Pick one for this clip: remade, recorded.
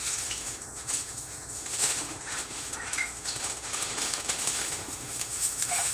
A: remade